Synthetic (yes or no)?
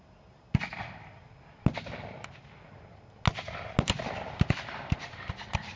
no